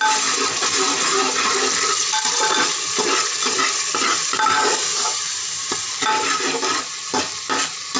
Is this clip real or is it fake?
real